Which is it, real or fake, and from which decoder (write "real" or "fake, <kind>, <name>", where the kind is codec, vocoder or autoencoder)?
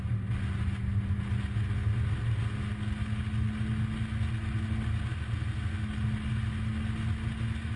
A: real